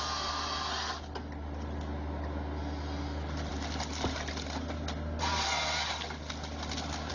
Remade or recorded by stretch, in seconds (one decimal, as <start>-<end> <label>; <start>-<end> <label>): 0.0-7.1 recorded